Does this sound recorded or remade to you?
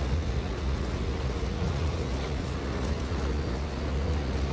remade